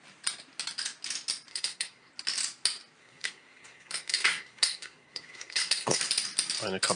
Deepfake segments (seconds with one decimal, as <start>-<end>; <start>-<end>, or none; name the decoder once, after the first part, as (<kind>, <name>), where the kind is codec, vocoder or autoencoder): 1.5-2.1 (codec, SNAC); 3.0-6.0